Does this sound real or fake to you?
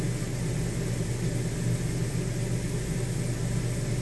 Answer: real